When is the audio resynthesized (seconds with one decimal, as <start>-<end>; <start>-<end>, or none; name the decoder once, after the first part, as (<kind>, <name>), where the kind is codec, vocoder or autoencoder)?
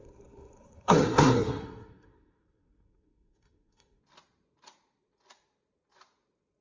0.0-4.0 (codec, SNAC)